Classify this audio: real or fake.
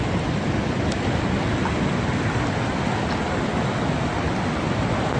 real